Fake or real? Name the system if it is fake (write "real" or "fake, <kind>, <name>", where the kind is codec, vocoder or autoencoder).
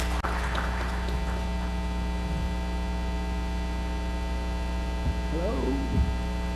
real